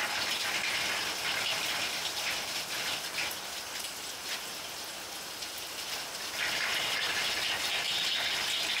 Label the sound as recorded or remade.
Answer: recorded